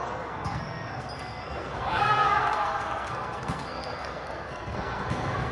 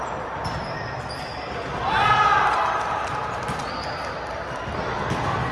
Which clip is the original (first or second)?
second